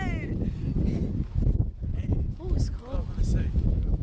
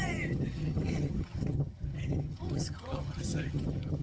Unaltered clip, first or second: first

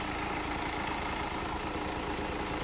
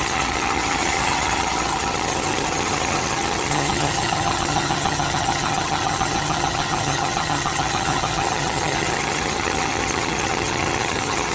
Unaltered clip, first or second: first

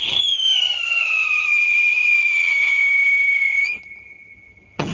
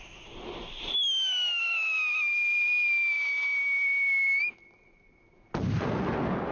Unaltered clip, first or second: second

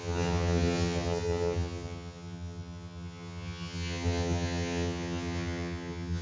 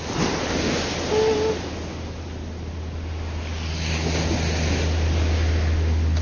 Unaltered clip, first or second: second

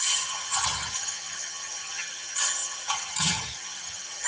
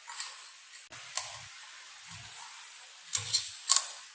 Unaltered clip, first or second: second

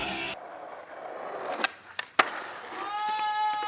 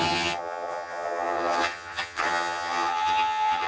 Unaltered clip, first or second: first